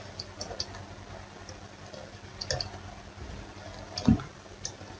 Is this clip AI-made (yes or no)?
no